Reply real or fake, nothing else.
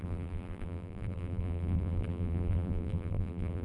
fake